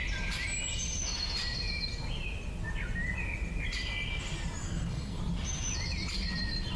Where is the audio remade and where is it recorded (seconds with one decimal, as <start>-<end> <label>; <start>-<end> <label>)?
0.0-4.6 recorded; 4.6-5.2 remade; 5.2-6.8 recorded